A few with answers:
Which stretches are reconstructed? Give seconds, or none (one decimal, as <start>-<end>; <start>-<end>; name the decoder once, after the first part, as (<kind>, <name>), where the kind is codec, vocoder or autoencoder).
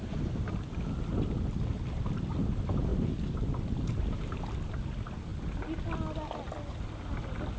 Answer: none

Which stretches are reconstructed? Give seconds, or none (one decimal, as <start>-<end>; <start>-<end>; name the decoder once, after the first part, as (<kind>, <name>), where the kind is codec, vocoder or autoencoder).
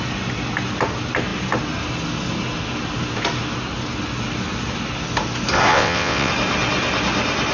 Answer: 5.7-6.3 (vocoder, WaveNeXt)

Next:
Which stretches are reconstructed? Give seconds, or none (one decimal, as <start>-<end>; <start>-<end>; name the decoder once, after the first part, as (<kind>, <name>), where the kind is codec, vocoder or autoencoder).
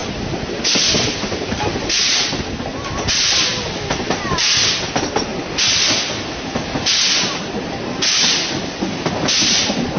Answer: none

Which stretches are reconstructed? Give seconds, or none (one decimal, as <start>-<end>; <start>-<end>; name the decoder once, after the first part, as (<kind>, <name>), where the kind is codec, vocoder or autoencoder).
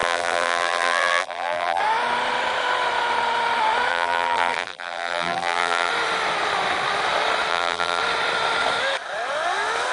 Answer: 0.0-1.8 (vocoder, BigVGAN v2); 3.9-5.9; 7.5-8.0